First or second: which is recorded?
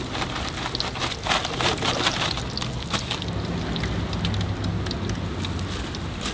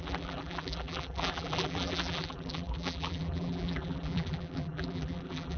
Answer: first